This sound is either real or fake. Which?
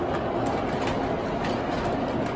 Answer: real